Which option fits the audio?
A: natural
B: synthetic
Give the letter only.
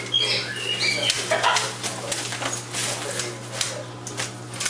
A